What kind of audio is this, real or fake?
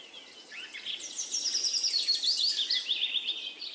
real